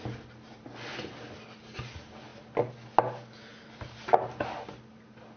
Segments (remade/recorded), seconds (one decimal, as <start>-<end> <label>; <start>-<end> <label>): 0.0-5.4 recorded